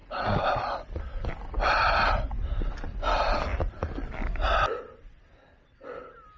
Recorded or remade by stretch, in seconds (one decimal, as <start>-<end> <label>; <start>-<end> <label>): 0.0-6.4 recorded